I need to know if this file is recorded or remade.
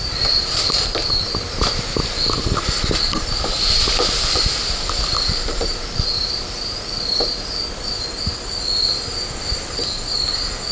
remade